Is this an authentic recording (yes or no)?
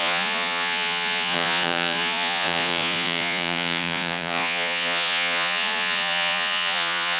no